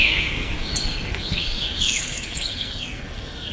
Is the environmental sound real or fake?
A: fake